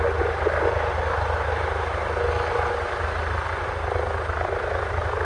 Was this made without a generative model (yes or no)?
yes